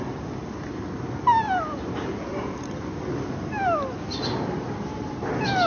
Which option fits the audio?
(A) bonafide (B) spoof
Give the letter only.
A